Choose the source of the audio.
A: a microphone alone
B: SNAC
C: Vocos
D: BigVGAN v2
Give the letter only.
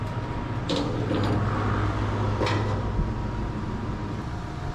A